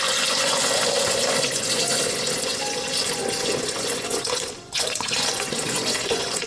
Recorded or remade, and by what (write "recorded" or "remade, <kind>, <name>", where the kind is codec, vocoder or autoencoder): remade, vocoder, Vocos